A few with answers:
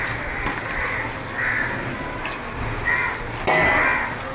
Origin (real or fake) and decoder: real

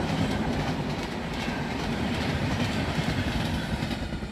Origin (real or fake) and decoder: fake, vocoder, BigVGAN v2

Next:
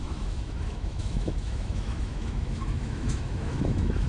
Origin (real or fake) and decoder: fake, autoencoder, DAC-VAE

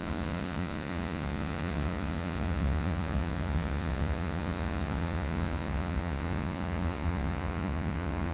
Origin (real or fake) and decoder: fake, vocoder, Vocos